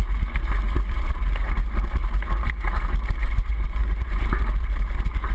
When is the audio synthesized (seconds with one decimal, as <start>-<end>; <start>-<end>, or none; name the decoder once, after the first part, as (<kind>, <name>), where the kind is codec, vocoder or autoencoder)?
3.2-4.2 (vocoder, Vocos)